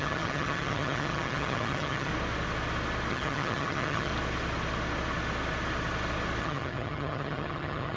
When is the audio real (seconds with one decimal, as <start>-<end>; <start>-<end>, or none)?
2.1-3.1; 4.1-6.4